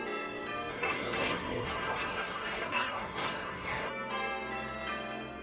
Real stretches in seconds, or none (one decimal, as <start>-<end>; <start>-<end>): 0.0-0.7; 3.9-5.4